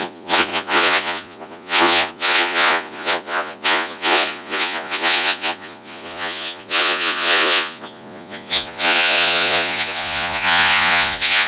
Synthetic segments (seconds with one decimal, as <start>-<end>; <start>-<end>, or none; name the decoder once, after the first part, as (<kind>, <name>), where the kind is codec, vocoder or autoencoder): 0.0-11.5 (vocoder, Vocos)